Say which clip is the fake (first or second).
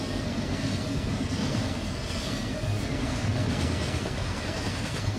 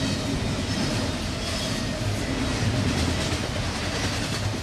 first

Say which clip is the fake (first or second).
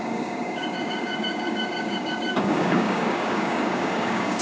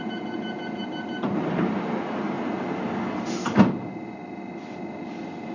first